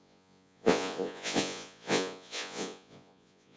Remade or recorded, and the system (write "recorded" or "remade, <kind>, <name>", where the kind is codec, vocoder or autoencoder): remade, vocoder, Vocos